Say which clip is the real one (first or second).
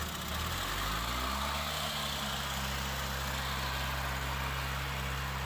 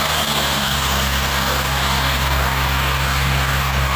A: first